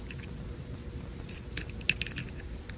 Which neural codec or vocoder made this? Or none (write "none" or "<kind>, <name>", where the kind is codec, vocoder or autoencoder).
none